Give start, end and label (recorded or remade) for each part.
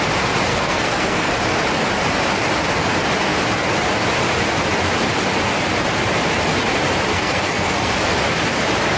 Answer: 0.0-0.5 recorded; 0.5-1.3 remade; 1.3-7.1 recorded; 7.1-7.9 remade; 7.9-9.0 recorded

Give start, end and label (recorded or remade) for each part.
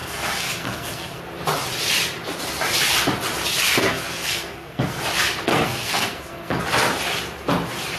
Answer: 0.0-1.2 remade; 1.2-3.8 recorded; 3.8-5.0 remade; 5.0-5.5 recorded; 5.5-6.6 remade; 6.6-8.0 recorded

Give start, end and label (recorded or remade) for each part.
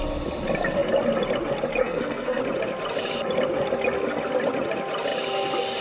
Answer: 0.0-1.8 recorded; 1.8-2.4 remade; 2.4-5.8 recorded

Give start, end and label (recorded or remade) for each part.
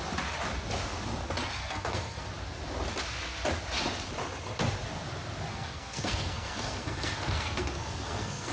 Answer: 0.0-1.6 recorded; 1.6-2.3 remade; 2.3-5.5 recorded; 5.5-8.5 remade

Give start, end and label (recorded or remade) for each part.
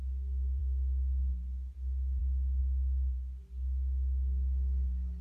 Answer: 0.0-5.2 recorded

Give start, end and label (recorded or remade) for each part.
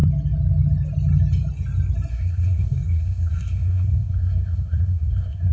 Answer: 0.0-2.1 recorded; 2.1-5.5 remade